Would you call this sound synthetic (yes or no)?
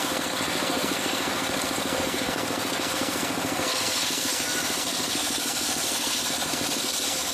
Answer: yes